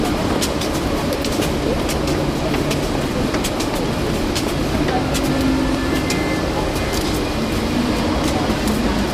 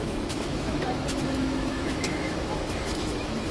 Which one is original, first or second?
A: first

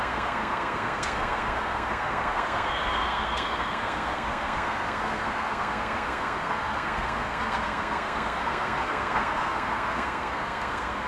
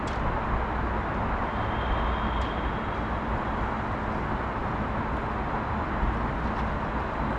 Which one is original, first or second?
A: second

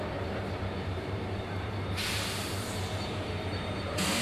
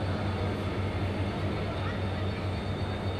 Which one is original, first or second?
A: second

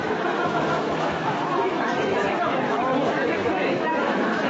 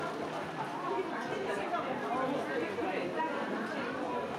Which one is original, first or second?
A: second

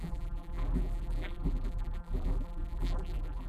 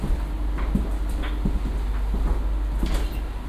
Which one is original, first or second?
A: second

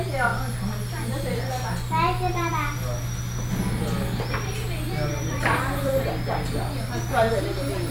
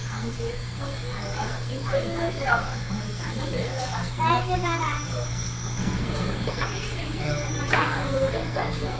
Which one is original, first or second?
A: first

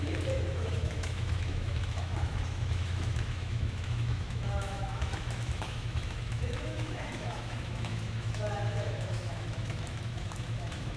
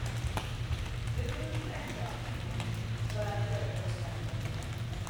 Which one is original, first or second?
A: second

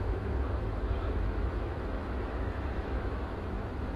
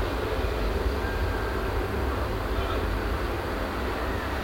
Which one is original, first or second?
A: second